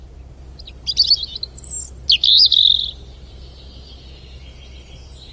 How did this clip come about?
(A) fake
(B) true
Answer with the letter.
B